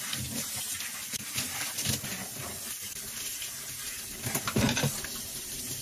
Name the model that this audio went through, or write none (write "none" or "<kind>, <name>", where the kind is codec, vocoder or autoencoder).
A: vocoder, BigVGAN v2